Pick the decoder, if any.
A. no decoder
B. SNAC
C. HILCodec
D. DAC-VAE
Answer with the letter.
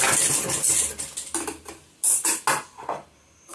A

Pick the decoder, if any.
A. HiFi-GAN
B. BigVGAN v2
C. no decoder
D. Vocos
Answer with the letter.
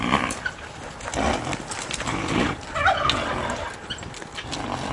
C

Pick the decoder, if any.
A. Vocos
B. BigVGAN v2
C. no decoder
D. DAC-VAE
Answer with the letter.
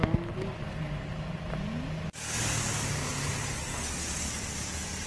C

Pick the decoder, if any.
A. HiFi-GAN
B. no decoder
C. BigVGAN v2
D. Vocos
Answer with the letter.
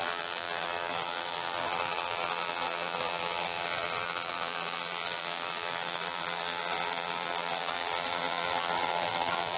C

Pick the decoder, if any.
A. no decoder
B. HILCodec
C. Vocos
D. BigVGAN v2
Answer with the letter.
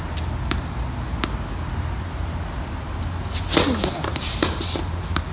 A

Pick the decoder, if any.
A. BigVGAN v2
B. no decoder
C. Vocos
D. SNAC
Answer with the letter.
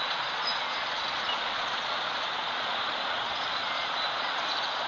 C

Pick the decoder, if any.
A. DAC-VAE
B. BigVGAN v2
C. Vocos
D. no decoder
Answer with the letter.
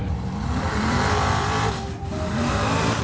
B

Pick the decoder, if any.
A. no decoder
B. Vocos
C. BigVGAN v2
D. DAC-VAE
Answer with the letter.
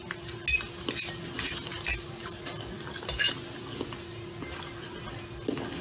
A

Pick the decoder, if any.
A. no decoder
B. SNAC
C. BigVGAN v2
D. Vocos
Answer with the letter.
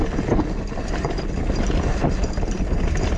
A